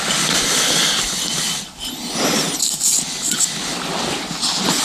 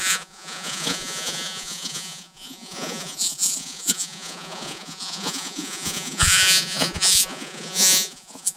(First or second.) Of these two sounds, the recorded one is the first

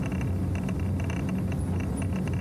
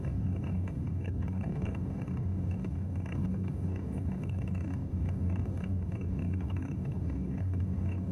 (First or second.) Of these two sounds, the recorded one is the first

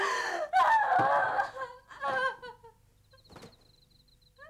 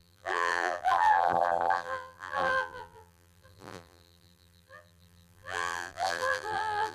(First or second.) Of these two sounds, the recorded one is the first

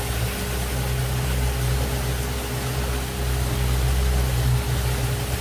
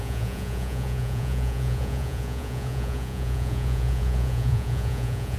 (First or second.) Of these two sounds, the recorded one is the first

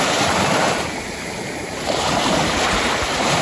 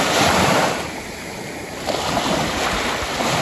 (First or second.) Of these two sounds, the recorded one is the second